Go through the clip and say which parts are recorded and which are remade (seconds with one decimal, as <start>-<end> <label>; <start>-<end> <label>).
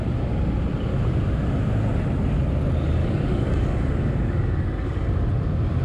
0.0-3.0 recorded; 3.0-5.1 remade; 5.1-5.8 recorded